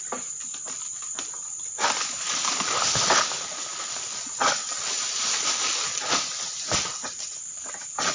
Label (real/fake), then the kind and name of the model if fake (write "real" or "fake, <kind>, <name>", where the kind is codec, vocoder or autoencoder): real